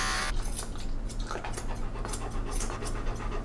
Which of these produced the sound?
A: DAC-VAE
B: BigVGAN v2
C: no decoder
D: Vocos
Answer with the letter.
C